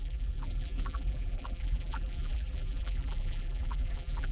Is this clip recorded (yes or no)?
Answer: no